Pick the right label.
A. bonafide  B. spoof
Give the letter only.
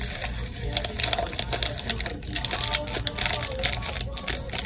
A